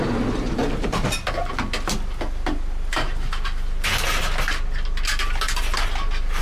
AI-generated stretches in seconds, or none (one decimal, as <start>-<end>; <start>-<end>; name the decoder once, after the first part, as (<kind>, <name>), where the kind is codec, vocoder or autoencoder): 0.6-1.5 (vocoder, BigVGAN v2)